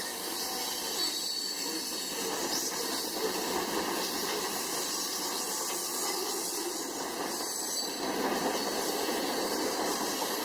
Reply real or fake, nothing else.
fake